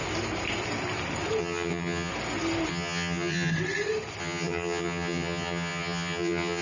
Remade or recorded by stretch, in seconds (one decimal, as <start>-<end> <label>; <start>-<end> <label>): 0.0-1.4 recorded; 1.4-2.1 remade; 2.1-2.7 recorded; 2.7-3.5 remade; 3.5-4.2 recorded; 4.2-6.6 remade